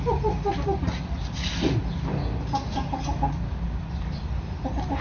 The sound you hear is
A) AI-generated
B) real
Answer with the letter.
B